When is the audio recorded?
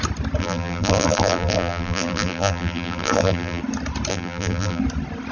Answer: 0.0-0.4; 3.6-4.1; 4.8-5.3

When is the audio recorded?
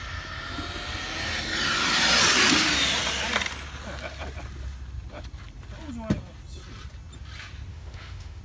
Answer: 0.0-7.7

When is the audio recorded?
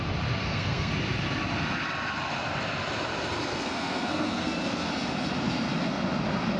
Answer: 0.0-0.4; 0.9-3.5; 4.9-6.6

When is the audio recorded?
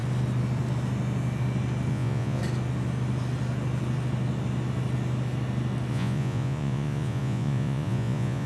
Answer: 0.0-1.9; 2.4-5.9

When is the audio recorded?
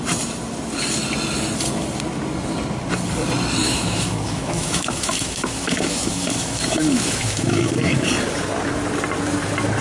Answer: 0.0-3.6; 8.1-9.8